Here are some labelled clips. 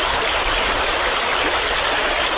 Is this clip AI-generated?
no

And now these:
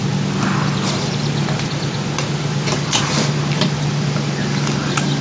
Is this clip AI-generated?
no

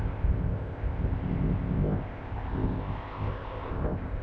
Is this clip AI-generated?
yes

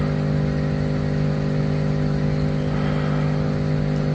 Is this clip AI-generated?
no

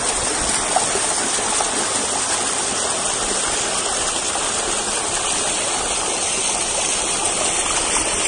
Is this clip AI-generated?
no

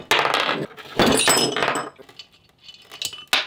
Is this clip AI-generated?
no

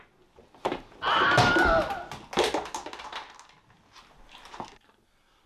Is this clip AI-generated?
no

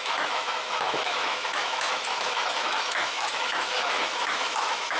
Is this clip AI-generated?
yes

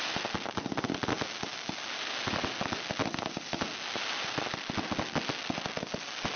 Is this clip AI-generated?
no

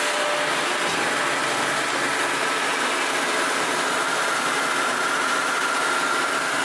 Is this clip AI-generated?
no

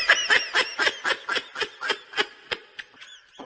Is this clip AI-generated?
no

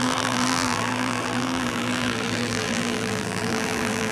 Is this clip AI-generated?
yes